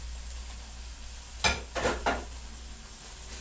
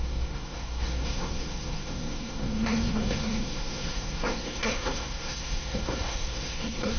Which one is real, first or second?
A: first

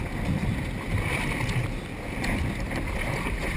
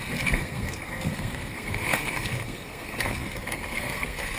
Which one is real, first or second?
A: first